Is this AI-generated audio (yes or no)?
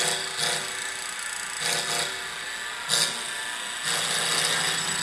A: no